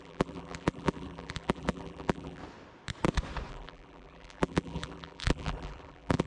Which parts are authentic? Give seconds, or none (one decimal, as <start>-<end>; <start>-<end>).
2.4-3.5